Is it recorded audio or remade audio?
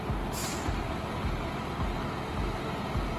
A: recorded